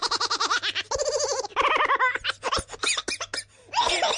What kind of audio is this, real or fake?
real